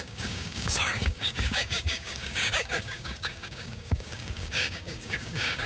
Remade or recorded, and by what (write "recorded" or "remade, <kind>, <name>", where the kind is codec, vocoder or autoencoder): remade, codec, DAC